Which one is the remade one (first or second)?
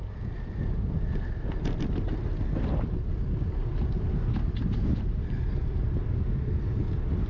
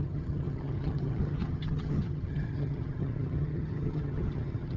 second